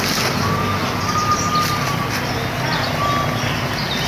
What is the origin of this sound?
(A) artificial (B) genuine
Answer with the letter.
B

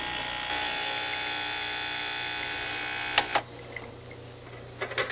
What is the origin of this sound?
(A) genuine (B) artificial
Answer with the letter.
A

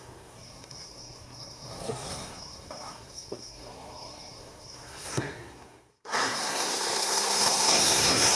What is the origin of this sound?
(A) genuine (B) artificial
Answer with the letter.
B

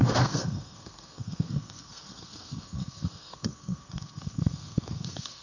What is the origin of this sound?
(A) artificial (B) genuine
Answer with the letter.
A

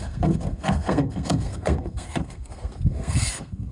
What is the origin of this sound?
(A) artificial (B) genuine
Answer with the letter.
A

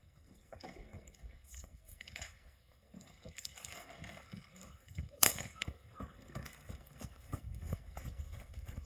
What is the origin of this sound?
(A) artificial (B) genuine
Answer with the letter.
A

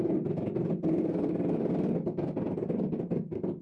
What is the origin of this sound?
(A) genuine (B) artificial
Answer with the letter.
A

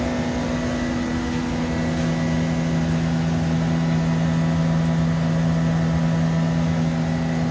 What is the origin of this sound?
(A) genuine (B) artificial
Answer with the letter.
A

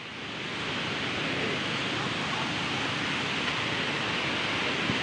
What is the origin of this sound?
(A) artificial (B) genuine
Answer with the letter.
B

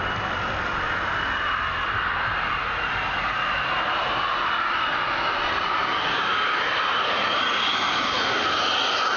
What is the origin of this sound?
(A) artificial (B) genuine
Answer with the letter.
B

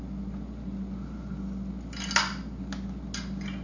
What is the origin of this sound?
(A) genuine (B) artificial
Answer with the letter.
A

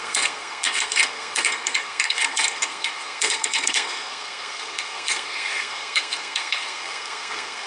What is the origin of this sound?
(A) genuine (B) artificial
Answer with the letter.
B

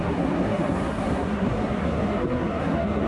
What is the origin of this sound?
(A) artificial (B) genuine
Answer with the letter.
A